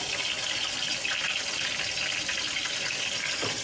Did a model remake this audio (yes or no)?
no